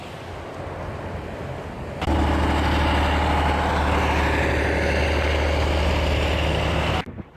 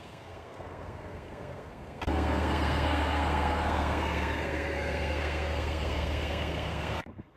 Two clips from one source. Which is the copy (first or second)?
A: second